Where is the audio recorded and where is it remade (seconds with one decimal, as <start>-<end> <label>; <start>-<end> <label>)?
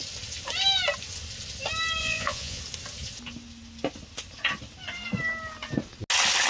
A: 0.0-2.0 recorded; 2.0-2.6 remade; 2.6-6.5 recorded